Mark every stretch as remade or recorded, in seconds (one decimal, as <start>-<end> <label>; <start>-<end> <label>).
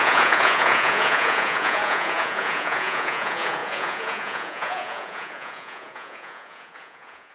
0.0-7.3 remade